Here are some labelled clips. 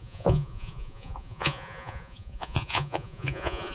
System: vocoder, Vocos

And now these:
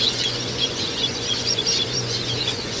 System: vocoder, Vocos